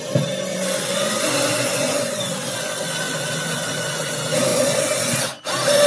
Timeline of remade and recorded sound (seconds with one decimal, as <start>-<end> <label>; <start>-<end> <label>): 0.0-0.5 recorded; 0.5-4.0 remade; 4.0-4.5 recorded; 4.5-5.4 remade; 5.4-5.9 recorded